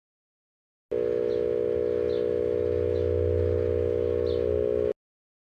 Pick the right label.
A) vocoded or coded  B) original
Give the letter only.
B